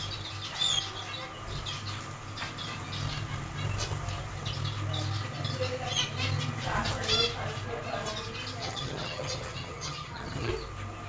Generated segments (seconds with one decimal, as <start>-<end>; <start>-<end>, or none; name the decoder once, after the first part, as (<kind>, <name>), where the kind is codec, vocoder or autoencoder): 8.6-10.5 (vocoder, HiFi-GAN)